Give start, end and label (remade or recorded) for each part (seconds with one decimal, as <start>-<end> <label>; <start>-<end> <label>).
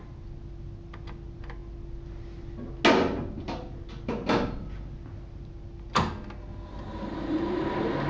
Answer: 0.0-8.1 recorded